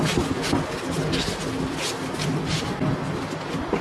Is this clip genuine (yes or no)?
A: yes